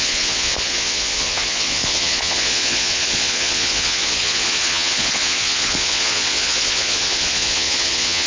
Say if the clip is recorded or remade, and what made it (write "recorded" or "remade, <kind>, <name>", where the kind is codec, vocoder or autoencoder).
remade, vocoder, Vocos